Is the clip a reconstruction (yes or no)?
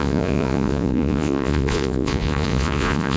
yes